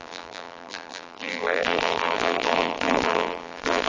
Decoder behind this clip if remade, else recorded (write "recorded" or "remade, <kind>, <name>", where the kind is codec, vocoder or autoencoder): remade, vocoder, BigVGAN v2